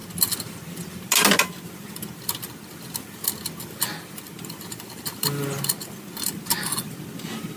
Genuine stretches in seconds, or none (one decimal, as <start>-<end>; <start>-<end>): 0.0-7.6